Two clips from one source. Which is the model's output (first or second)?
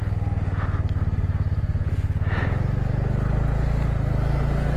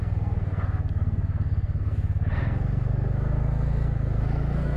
second